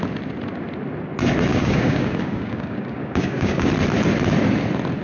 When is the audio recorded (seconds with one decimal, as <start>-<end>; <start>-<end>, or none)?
0.0-1.5; 3.7-5.0